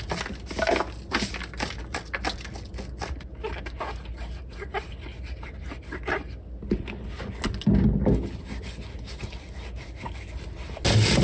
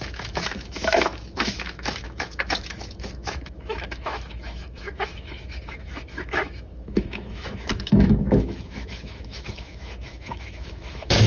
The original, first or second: first